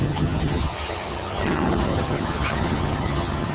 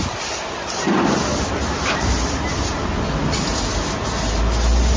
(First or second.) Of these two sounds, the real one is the second